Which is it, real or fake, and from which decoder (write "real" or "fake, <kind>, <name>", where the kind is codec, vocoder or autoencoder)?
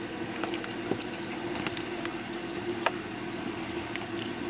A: real